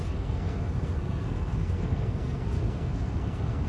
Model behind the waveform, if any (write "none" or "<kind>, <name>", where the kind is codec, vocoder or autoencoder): codec, SNAC